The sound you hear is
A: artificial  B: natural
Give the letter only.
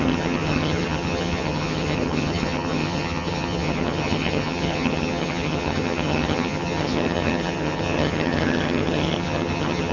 A